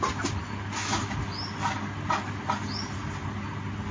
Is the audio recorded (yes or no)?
yes